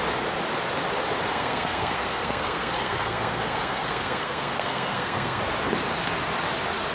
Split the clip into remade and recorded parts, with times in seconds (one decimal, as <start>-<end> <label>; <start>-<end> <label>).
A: 0.0-1.3 recorded; 1.3-5.4 remade; 5.4-6.9 recorded